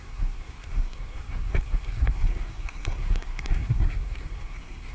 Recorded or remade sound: remade